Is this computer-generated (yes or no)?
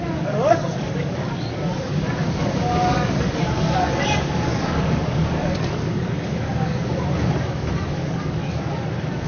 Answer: yes